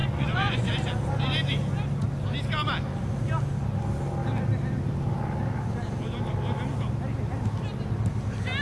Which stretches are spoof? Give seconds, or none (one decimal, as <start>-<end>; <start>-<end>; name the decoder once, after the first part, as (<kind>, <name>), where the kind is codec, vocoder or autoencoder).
0.0-0.7 (vocoder, Vocos)